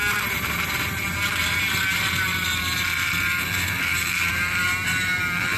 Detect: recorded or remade remade